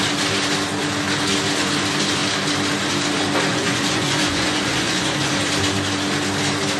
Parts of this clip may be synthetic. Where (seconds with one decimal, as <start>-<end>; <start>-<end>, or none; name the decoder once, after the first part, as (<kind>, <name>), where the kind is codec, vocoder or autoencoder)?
3.5-5.3 (vocoder, Vocos)